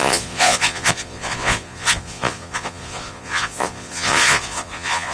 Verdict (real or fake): fake